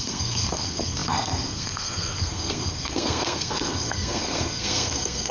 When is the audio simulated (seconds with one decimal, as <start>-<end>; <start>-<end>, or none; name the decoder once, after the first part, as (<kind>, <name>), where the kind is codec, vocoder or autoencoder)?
0.0-5.3 (codec, SNAC)